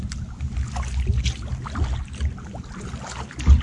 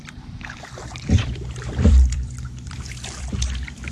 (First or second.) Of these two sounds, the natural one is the first